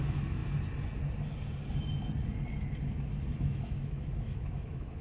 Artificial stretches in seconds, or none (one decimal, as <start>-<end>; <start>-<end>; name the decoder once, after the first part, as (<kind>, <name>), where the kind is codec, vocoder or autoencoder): 0.0-0.4 (autoencoder, DAC-VAE); 3.4-5.0